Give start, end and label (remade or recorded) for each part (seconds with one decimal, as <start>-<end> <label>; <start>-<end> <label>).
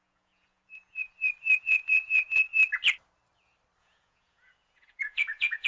0.0-1.1 remade; 1.1-1.6 recorded; 1.6-2.5 remade; 2.5-3.8 recorded; 3.8-5.7 remade